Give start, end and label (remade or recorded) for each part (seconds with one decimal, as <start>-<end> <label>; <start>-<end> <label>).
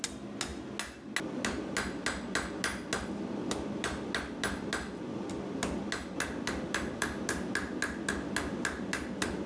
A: 0.0-9.5 recorded